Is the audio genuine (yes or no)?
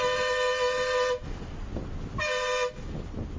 yes